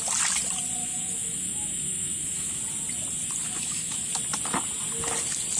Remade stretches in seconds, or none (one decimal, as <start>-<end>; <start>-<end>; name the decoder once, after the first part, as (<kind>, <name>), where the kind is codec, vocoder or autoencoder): 0.8-2.6 (autoencoder, DAC-VAE); 3.4-4.1